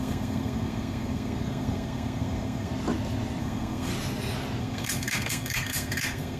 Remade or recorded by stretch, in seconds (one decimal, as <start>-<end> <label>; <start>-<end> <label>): 0.0-2.7 remade; 2.7-3.4 recorded; 3.4-3.9 remade; 3.9-4.6 recorded; 4.6-6.4 remade